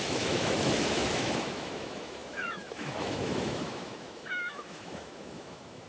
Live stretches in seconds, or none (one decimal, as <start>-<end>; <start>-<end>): none